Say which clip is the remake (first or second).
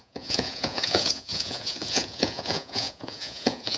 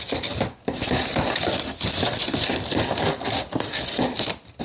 first